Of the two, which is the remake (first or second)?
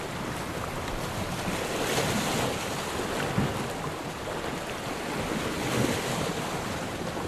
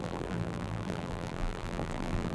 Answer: second